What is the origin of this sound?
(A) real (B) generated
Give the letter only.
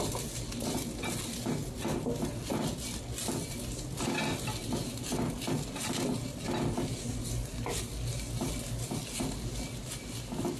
A